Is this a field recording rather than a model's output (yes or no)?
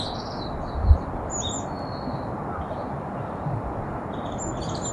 yes